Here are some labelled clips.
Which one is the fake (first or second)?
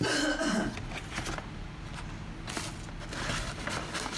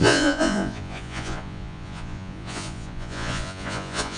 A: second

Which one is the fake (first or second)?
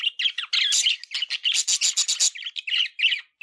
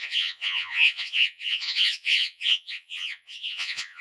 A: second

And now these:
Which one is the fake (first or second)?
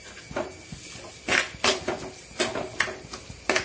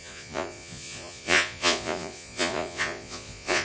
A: second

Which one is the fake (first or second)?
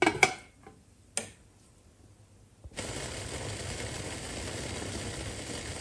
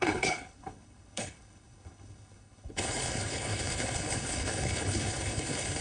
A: second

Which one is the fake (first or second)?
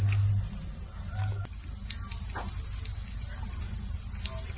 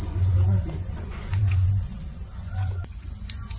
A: second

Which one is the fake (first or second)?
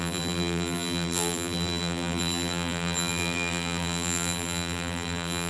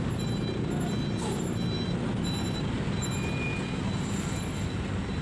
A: first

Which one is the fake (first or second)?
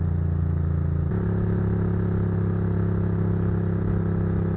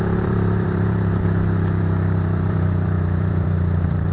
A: second